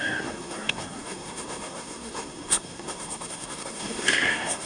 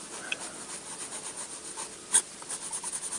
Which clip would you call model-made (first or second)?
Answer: first